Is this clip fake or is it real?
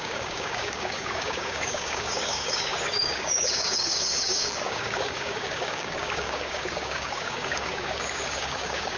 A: fake